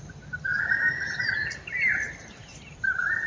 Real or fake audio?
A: real